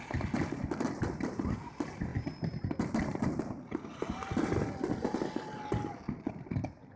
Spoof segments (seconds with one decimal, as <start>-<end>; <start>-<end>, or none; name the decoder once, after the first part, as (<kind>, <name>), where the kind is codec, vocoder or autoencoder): 0.0-2.1 (vocoder, BigVGAN v2); 6.3-7.0